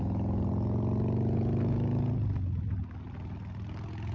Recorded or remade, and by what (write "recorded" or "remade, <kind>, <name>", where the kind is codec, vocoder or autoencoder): recorded